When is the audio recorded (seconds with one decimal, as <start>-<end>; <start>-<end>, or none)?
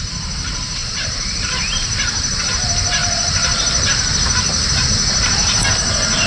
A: 0.0-0.8; 2.4-3.0; 4.8-6.3